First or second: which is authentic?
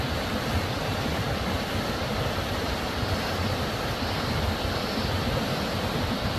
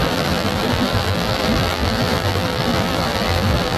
first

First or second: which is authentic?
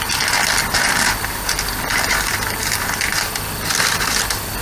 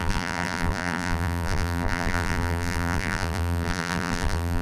first